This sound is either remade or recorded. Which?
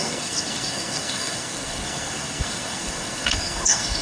remade